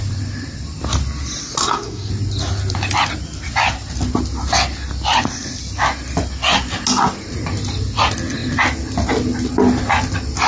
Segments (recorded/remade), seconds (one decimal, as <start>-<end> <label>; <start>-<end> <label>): 0.0-1.6 recorded; 1.6-2.1 remade; 2.1-10.5 recorded